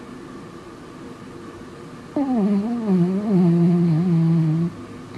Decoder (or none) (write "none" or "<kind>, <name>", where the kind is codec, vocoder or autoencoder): none